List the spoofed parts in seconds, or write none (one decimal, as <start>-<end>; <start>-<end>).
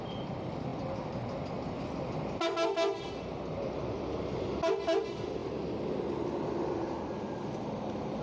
none